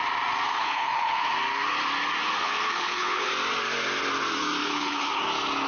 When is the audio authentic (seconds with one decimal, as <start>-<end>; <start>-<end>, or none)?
0.0-0.5; 1.3-2.4; 3.3-4.6; 5.2-5.7